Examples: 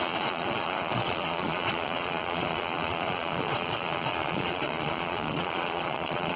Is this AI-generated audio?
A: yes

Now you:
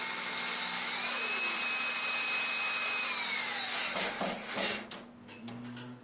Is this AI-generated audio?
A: no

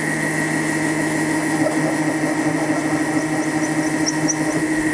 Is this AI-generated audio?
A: no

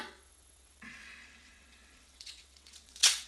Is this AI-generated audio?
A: yes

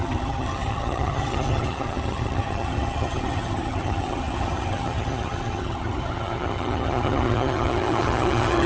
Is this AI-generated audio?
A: yes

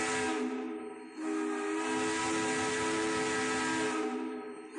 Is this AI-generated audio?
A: no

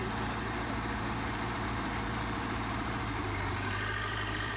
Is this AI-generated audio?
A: yes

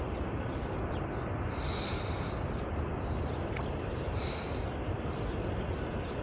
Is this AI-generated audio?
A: yes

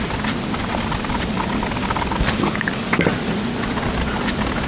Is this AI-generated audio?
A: no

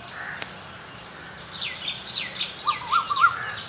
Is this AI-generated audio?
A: no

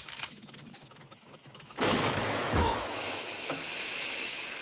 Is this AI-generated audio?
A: yes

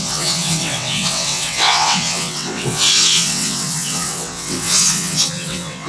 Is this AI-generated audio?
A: yes